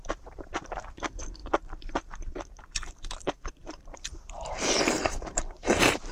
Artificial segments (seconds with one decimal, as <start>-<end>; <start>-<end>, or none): 0.0-6.1